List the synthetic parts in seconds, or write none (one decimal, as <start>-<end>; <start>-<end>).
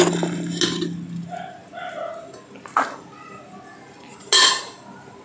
none